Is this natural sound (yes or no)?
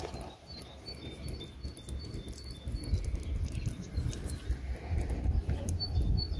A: yes